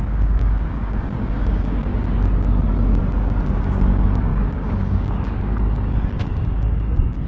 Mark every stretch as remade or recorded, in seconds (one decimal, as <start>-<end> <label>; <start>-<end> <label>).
0.0-1.9 remade; 1.9-3.5 recorded; 3.5-7.3 remade